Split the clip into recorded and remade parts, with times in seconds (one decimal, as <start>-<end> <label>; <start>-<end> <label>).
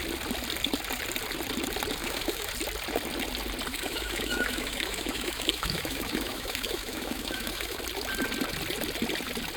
0.0-2.0 recorded; 2.0-2.5 remade; 2.5-3.7 recorded; 3.7-7.8 remade; 7.8-9.6 recorded